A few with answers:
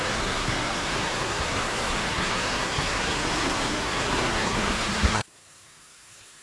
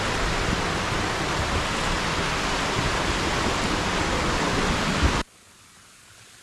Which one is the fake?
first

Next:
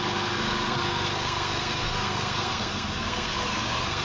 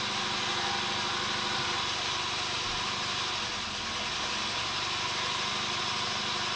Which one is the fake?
first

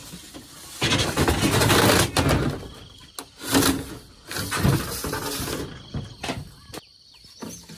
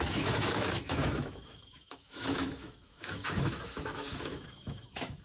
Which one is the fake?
second